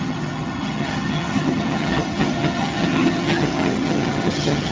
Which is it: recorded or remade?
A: remade